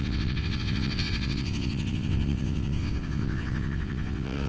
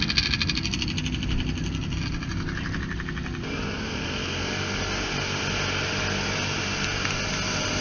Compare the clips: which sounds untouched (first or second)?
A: second